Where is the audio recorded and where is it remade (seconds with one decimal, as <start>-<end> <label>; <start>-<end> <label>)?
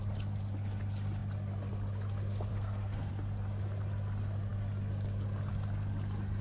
0.0-2.5 recorded; 2.5-3.1 remade; 3.1-6.4 recorded